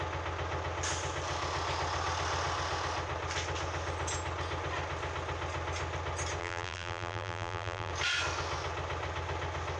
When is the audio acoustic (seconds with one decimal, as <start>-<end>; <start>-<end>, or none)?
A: 0.0-6.4; 7.9-9.8